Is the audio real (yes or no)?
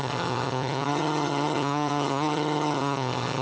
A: no